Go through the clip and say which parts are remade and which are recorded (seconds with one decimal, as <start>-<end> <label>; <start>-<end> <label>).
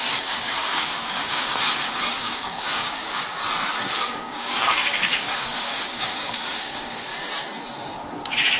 0.0-3.4 remade; 3.4-3.9 recorded; 3.9-7.1 remade; 7.1-8.6 recorded